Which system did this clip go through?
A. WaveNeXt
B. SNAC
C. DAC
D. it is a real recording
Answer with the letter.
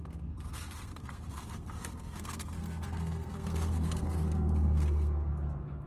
B